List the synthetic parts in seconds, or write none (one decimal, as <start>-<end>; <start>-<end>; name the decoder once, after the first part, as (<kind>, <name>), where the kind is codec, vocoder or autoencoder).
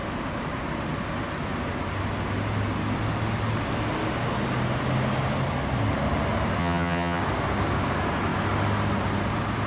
6.6-7.2 (vocoder, HiFi-GAN)